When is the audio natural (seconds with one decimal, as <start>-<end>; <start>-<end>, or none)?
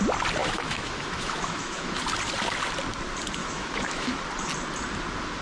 0.0-0.4; 2.0-3.4; 4.2-5.4